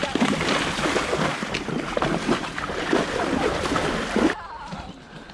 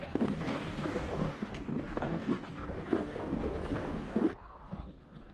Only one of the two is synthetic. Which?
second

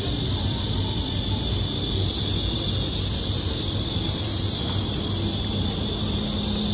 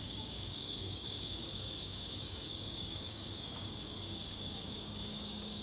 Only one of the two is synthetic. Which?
second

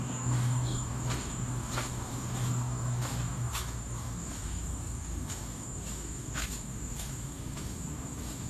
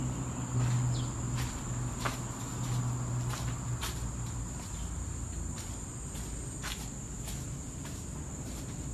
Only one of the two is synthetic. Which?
first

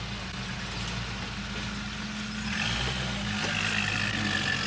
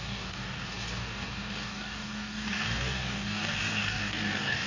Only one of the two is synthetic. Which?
second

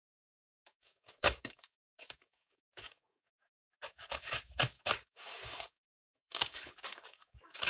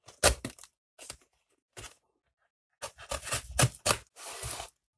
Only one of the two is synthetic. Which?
first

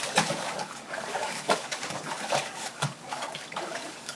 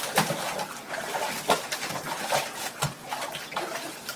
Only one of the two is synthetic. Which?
first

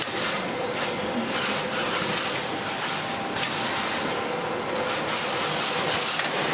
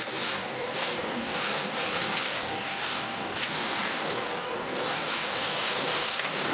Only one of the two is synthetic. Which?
second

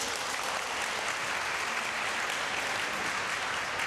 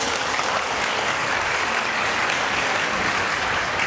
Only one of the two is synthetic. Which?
second